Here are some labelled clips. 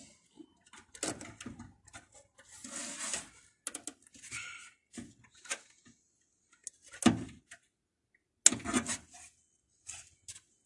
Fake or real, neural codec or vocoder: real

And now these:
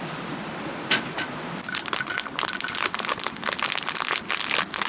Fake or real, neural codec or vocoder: real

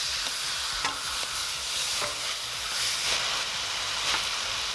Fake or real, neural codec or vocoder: real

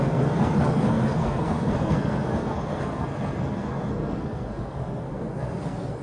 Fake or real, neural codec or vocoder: fake, codec, SNAC